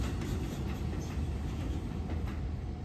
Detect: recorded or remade recorded